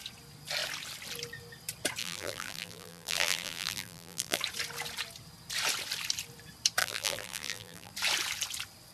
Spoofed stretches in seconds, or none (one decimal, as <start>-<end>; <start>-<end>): 2.0-4.4; 6.8-7.9